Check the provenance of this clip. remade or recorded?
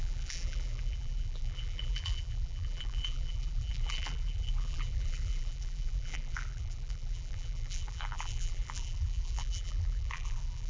remade